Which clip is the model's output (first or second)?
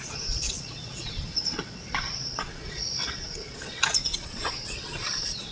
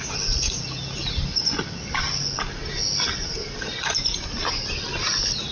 first